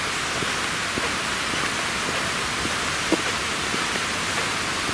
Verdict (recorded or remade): recorded